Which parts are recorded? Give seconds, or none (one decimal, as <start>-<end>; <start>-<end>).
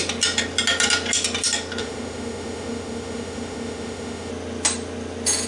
0.0-1.8; 4.3-5.5